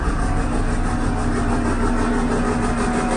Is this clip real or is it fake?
real